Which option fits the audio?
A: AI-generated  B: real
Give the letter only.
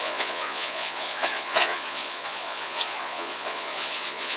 A